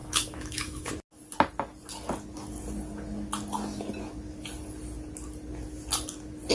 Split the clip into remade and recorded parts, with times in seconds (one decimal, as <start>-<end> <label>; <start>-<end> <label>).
0.0-0.9 remade; 0.9-6.5 recorded